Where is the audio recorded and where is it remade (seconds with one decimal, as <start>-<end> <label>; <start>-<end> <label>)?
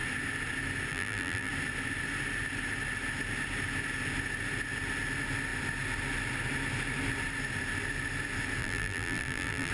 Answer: 0.0-0.9 recorded; 0.9-1.5 remade; 1.5-8.6 recorded; 8.6-9.7 remade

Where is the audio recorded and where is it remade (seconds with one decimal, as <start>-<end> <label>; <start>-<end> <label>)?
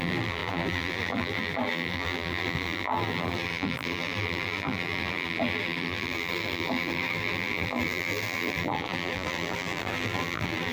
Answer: 0.0-10.7 remade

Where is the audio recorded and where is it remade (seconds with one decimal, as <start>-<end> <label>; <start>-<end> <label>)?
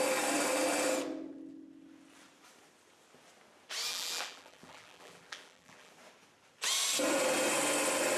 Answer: 0.0-3.9 recorded; 3.9-5.9 remade; 5.9-8.2 recorded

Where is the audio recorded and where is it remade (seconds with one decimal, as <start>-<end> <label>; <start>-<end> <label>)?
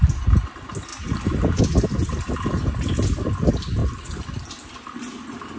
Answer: 0.0-0.9 recorded; 0.9-1.6 remade; 1.6-2.0 recorded; 2.0-3.2 remade; 3.2-3.8 recorded; 3.8-5.6 remade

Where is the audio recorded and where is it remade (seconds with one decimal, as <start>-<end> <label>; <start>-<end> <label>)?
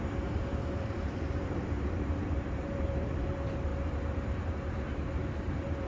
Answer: 0.0-3.7 remade; 3.7-5.2 recorded; 5.2-5.9 remade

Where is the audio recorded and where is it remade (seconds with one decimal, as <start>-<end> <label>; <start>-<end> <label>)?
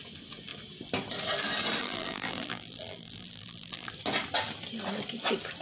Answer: 0.0-1.8 recorded; 1.8-3.9 remade; 3.9-5.6 recorded